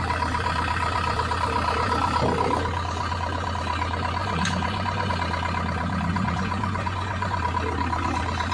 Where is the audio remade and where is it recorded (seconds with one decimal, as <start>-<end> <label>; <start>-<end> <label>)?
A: 0.0-4.2 recorded; 4.2-5.1 remade; 5.1-6.1 recorded; 6.1-7.4 remade; 7.4-8.5 recorded